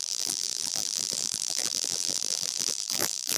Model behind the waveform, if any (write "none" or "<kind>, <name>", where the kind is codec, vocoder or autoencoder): vocoder, BigVGAN v2